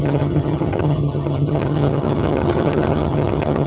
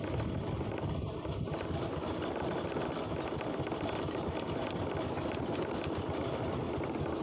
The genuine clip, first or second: second